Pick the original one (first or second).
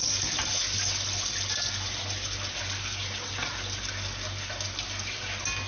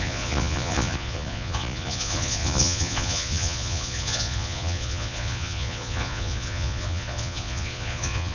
first